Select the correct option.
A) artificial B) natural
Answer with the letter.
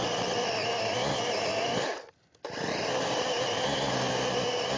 B